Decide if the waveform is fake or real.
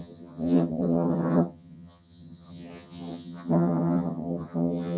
fake